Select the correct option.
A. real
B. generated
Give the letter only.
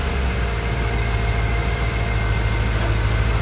A